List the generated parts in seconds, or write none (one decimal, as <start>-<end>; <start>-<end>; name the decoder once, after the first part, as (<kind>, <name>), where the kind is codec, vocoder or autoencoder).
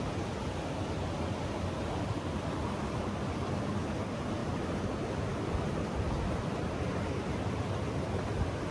none